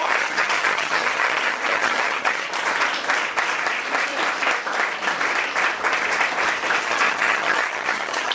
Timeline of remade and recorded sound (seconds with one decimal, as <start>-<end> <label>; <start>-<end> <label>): 0.0-2.5 remade; 2.5-6.8 recorded; 6.8-8.3 remade